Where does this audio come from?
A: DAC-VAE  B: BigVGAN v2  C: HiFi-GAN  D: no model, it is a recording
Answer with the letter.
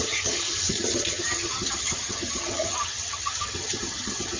C